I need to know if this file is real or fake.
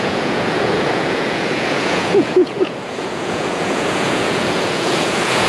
fake